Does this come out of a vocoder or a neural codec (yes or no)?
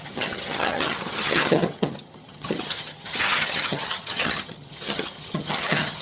yes